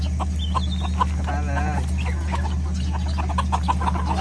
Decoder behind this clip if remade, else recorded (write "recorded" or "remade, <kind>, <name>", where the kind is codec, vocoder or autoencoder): recorded